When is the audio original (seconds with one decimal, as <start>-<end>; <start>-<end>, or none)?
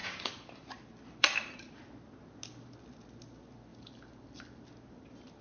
0.7-1.2; 1.8-3.7; 4.6-5.4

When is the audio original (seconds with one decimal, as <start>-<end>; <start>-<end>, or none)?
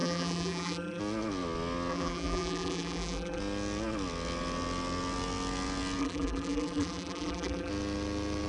1.0-1.9; 3.4-6.0; 7.7-8.5